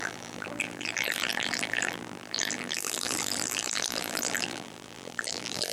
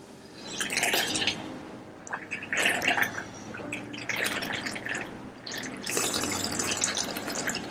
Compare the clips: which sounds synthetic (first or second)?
first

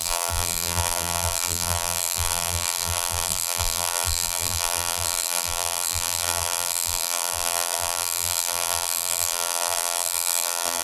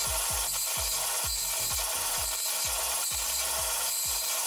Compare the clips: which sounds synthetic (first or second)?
first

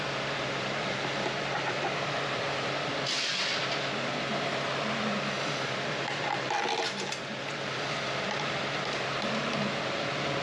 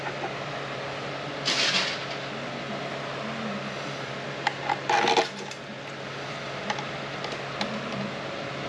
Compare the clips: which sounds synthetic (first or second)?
first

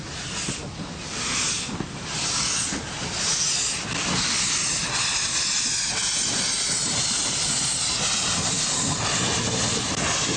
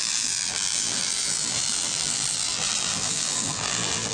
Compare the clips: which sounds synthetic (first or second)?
second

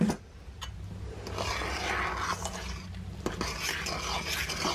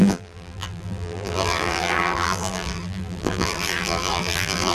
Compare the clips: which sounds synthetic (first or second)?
second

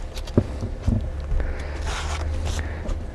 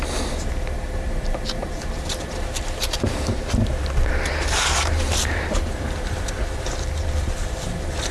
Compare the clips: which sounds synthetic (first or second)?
second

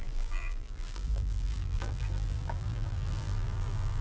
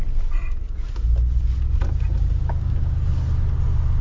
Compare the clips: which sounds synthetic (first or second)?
first